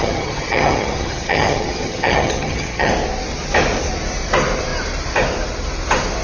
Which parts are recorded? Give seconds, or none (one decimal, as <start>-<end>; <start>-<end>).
2.9-6.2